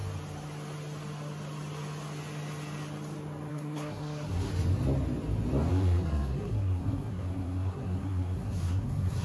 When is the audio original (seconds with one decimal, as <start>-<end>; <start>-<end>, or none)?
0.0-3.5; 4.5-5.7